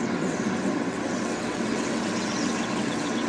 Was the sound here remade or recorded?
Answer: remade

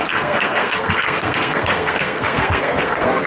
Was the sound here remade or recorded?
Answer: remade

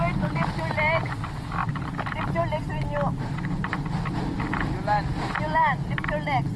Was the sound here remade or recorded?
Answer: recorded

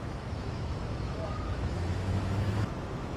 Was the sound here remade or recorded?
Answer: remade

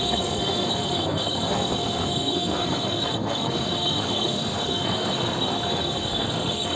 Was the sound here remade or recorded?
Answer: remade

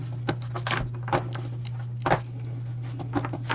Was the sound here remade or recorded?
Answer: recorded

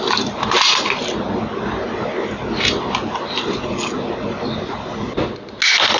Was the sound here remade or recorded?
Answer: recorded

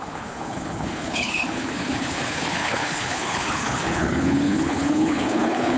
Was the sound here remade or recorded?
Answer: remade